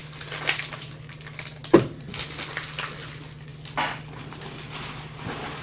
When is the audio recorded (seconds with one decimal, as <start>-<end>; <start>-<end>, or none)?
0.0-5.6